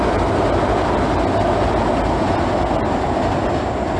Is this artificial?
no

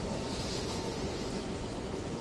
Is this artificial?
yes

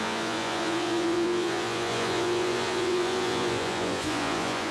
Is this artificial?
yes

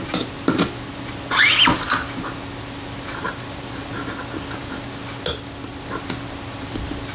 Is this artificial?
no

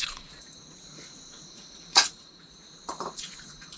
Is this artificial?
yes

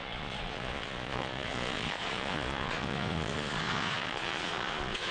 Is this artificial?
yes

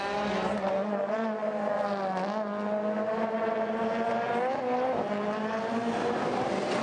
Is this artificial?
no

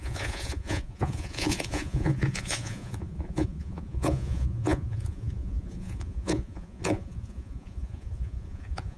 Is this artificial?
yes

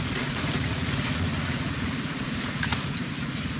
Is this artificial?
yes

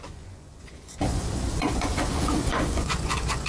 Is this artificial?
yes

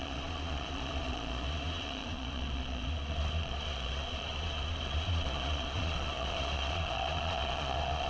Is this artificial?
yes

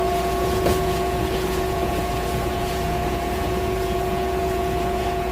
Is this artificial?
yes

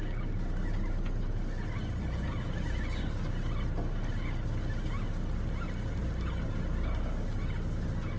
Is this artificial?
no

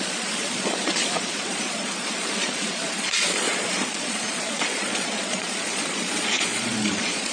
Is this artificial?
yes